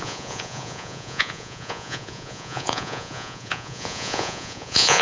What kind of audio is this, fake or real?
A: fake